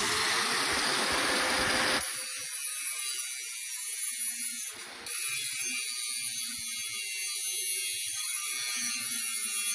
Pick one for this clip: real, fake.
real